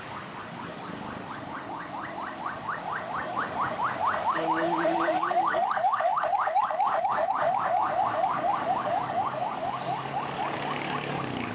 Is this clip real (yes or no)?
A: no